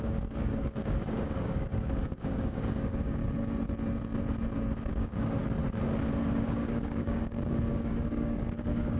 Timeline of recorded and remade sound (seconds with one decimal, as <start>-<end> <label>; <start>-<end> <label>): 0.0-3.2 remade; 3.2-4.9 recorded; 4.9-5.4 remade; 5.4-6.2 recorded; 6.2-9.0 remade